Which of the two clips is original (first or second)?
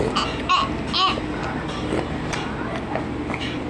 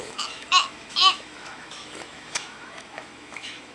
first